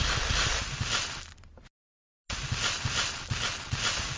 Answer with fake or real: real